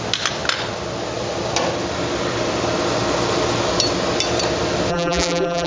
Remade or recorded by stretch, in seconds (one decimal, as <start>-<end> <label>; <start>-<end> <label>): 0.0-4.9 recorded; 4.9-5.7 remade